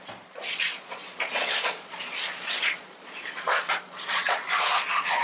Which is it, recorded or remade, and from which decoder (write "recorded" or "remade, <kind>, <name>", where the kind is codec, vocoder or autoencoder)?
remade, vocoder, Vocos